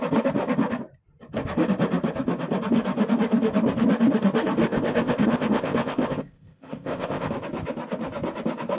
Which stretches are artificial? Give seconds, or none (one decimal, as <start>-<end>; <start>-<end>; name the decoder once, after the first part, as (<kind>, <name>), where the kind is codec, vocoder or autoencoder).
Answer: 4.6-7.3 (codec, ZipCodec)